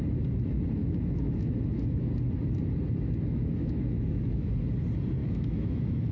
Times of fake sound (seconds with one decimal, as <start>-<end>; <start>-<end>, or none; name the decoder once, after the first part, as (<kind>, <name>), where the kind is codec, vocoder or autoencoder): 0.8-2.1 (autoencoder, DAC-VAE); 3.3-4.5; 5.2-6.1